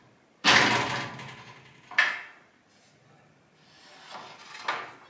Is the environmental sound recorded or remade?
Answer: recorded